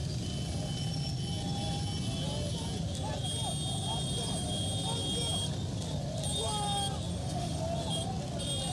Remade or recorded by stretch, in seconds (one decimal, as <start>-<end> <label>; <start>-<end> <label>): 0.0-7.1 recorded; 7.1-7.6 remade; 7.6-8.7 recorded